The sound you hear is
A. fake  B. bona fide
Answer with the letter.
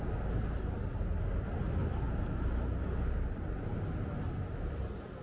B